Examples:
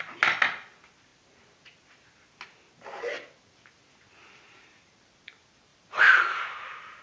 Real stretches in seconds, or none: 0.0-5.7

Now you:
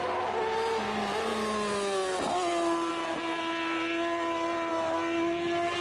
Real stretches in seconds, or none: 0.0-5.8